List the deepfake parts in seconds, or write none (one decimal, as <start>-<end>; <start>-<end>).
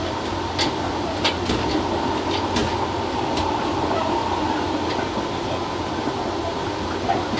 none